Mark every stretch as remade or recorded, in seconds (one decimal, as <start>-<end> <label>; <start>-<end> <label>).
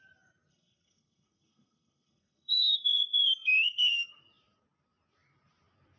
0.0-0.5 recorded; 0.5-4.1 remade; 4.1-6.0 recorded